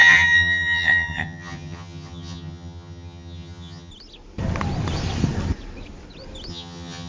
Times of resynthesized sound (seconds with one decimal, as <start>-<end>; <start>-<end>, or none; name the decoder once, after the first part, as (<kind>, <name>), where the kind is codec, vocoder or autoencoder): 0.0-3.9 (vocoder, HiFi-GAN); 6.5-7.1